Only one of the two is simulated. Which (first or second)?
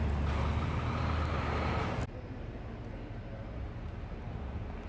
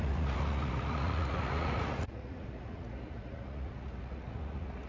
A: second